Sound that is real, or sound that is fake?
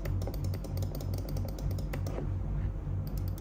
real